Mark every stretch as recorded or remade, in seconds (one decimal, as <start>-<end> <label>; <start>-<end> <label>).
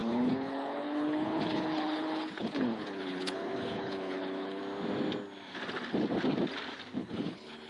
0.0-4.6 remade; 4.6-7.0 recorded; 7.0-7.7 remade